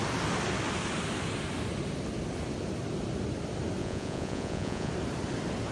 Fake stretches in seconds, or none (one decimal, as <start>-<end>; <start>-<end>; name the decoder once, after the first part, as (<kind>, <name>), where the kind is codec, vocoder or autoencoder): 3.8-4.9 (vocoder, Vocos)